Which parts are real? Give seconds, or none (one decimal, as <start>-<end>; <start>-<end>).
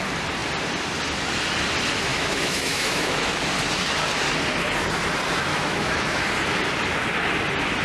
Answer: 0.0-2.1; 3.4-5.5; 6.2-7.8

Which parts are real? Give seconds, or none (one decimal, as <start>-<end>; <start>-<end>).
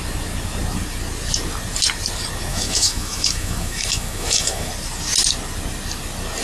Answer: 0.0-2.5; 4.7-6.4